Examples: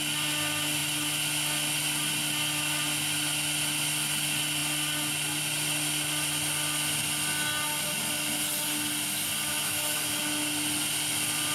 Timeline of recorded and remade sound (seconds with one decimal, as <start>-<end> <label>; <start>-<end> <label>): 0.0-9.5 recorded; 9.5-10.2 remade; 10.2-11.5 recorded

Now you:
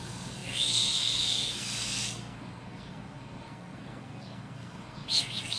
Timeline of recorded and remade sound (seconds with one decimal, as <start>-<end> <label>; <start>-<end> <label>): 0.0-5.6 remade

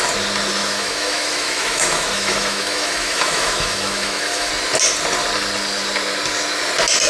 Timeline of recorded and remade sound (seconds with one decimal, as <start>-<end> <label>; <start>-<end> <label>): 0.0-0.6 recorded; 0.6-4.5 remade; 4.5-7.1 recorded

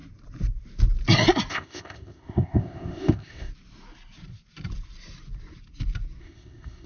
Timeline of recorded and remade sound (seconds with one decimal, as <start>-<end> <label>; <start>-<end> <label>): 0.0-1.5 recorded; 1.5-3.5 remade; 3.5-6.2 recorded; 6.2-6.9 remade

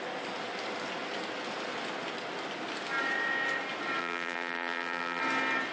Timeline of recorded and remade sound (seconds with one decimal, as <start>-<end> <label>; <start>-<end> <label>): 0.0-4.0 recorded; 4.0-5.2 remade; 5.2-5.7 recorded